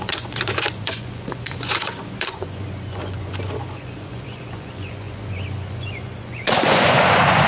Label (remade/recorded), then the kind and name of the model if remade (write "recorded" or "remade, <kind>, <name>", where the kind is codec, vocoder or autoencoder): remade, vocoder, Vocos